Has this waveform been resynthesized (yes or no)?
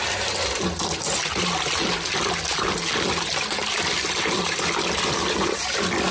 no